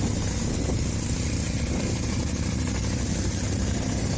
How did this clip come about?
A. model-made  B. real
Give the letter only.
B